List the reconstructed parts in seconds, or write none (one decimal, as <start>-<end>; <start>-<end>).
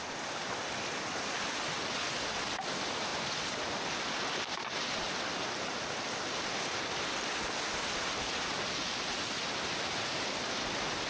3.1-3.7